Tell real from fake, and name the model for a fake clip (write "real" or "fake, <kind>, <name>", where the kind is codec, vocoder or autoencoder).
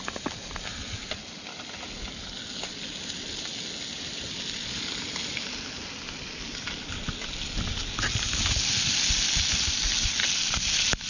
real